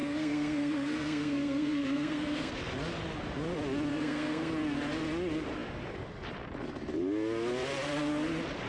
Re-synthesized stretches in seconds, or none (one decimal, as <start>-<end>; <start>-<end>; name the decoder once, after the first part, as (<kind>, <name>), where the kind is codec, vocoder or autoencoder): 0.0-2.5 (codec, SNAC); 3.9-4.5